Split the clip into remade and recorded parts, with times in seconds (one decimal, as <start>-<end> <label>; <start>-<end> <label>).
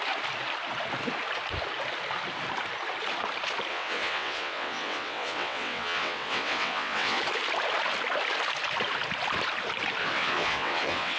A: 0.0-3.7 recorded; 3.7-7.2 remade; 7.2-10.0 recorded; 10.0-11.2 remade